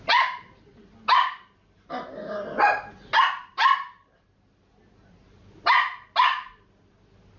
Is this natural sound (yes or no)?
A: yes